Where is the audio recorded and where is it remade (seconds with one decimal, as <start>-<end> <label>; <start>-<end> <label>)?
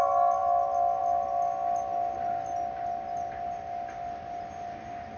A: 0.0-5.2 recorded